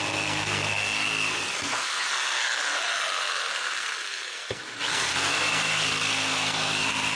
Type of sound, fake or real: fake